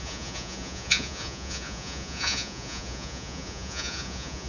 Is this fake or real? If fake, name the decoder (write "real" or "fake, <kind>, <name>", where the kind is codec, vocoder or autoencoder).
fake, vocoder, Vocos